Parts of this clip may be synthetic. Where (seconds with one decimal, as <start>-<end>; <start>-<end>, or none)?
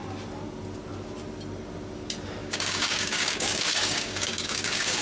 2.4-5.0